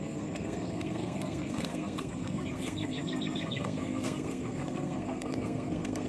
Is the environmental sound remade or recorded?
remade